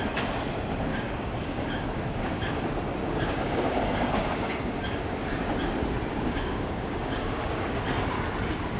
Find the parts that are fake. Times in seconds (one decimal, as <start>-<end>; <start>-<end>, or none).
0.9-2.6; 3.0-4.5; 6.1-7.8